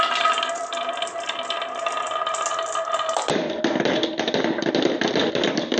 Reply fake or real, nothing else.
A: real